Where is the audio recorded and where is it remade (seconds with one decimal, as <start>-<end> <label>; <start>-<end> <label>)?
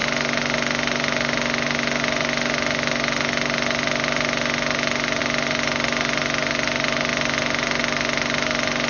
0.0-8.9 recorded